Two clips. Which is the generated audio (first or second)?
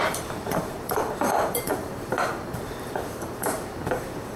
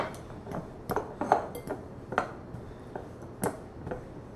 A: first